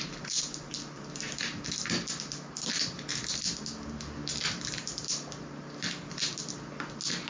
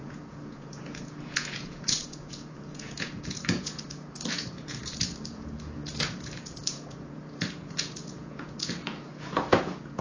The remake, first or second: second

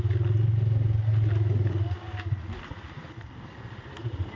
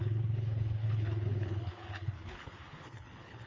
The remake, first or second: second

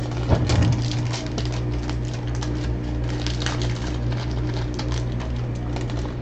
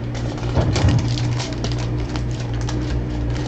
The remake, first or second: second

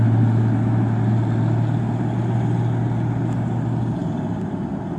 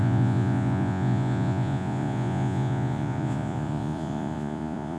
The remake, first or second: second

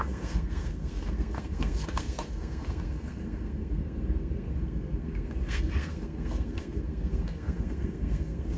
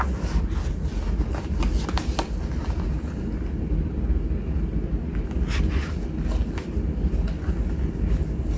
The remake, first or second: first